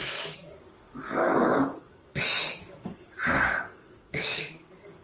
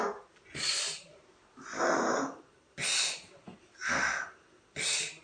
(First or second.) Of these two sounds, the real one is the second